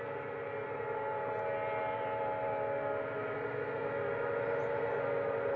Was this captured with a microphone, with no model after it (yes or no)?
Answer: yes